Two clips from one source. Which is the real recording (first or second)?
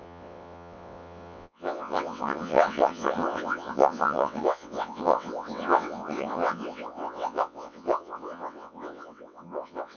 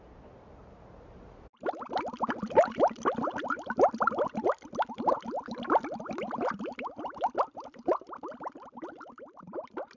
second